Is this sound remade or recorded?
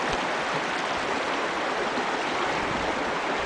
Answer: recorded